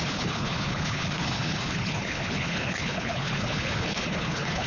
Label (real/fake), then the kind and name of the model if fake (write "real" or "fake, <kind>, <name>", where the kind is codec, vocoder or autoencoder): fake, codec, HILCodec